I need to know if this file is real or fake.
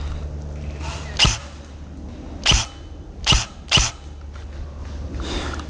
real